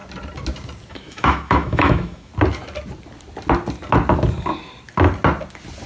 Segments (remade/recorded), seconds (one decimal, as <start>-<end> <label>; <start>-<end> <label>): 0.0-0.9 recorded; 0.9-2.3 remade; 2.3-5.9 recorded